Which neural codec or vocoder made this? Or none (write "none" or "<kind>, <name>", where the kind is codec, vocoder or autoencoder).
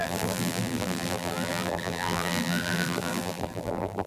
vocoder, BigVGAN v2